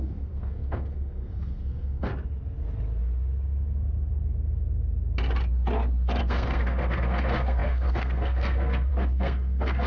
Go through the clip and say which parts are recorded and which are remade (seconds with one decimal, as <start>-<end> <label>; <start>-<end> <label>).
0.0-2.1 remade; 2.1-6.2 recorded; 6.2-9.9 remade